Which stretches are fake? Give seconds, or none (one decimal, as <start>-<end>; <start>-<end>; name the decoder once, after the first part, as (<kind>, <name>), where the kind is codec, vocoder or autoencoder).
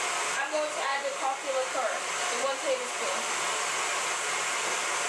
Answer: none